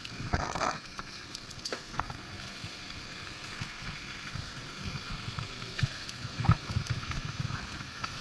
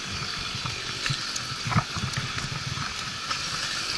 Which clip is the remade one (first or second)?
first